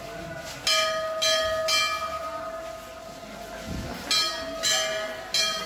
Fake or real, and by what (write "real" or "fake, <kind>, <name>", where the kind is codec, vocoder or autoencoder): real